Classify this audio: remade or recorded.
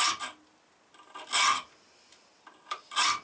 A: recorded